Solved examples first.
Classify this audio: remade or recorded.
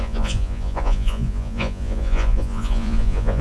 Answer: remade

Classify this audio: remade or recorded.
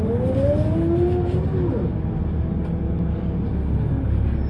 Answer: recorded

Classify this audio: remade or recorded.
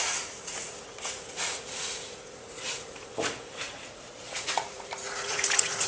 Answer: remade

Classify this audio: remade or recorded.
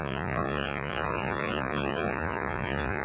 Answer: remade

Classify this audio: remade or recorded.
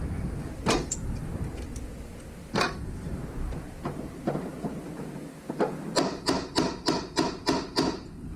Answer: recorded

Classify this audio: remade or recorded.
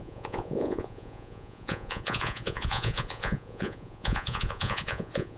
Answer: remade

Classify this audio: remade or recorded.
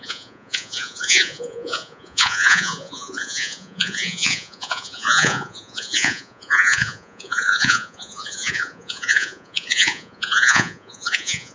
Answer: remade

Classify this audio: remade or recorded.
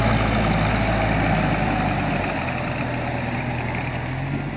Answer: recorded